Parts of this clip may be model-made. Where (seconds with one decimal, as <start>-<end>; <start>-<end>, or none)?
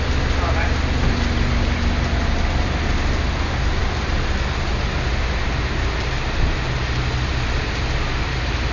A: none